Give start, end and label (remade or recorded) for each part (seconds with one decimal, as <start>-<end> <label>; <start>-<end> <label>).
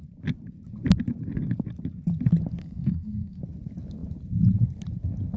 0.0-2.6 recorded; 2.6-3.4 remade; 3.4-5.4 recorded